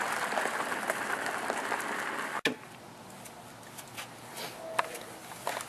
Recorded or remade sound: recorded